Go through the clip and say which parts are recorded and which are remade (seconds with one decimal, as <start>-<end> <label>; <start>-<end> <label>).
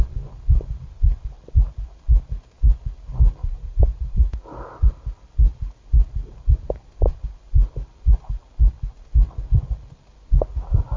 0.0-3.4 recorded; 3.4-4.4 remade; 4.4-11.0 recorded